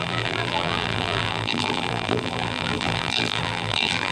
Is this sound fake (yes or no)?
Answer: yes